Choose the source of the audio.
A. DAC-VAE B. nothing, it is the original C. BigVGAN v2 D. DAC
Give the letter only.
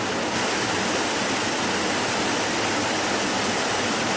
B